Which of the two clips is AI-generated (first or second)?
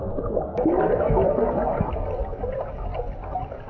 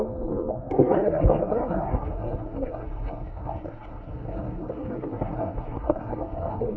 second